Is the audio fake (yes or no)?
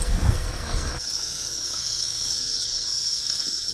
yes